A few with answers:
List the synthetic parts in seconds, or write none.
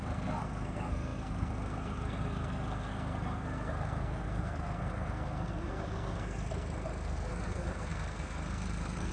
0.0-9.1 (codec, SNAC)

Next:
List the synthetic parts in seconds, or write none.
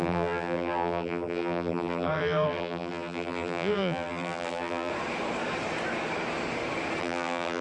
0.0-4.9 (vocoder, BigVGAN v2); 7.0-7.6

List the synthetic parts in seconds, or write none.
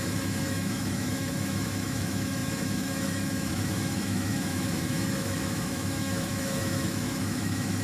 0.0-7.8 (autoencoder, DAC-VAE)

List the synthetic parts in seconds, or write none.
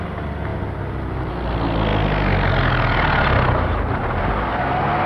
none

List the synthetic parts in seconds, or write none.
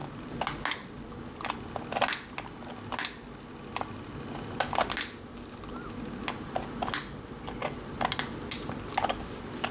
none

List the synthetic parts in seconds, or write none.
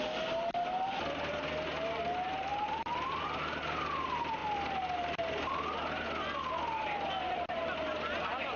none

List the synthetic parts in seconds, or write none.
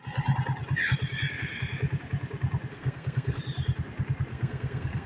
2.7-3.4 (codec, SNAC); 4.3-5.1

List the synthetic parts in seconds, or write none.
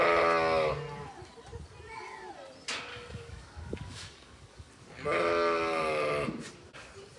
2.9-4.7 (codec, DAC)